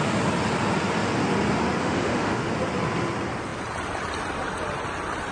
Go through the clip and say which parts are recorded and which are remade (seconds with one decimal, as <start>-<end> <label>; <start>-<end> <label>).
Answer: 0.0-1.8 recorded; 1.8-2.5 remade; 2.5-5.3 recorded